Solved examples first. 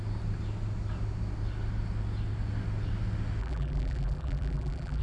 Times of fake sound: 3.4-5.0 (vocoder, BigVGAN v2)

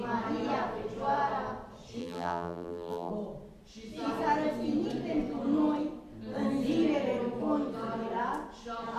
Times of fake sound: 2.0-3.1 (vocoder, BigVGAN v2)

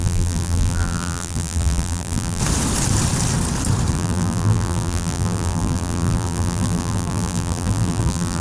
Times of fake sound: 0.0-2.4 (vocoder, BigVGAN v2); 3.9-8.4

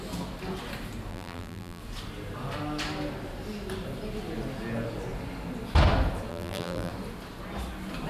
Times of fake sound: 1.1-1.8 (vocoder, BigVGAN v2); 6.3-6.9